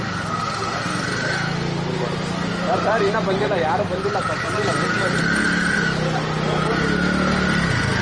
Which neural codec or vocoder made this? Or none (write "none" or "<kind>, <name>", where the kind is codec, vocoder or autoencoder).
none